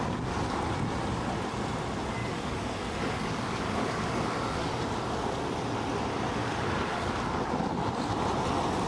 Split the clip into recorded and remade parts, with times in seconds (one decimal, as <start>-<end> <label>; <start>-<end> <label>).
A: 0.0-2.2 recorded; 2.2-4.8 remade; 4.8-6.4 recorded; 6.4-7.7 remade; 7.7-8.9 recorded